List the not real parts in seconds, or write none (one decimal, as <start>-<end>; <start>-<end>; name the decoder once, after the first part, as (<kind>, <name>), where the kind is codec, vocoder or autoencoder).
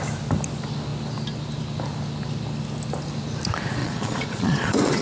3.8-5.0 (vocoder, Vocos)